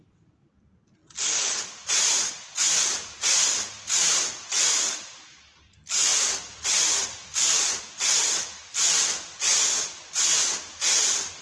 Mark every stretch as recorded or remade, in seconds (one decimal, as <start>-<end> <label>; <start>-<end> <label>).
0.0-11.4 recorded